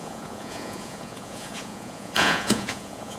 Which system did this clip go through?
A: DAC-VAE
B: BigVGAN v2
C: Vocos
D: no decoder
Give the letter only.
C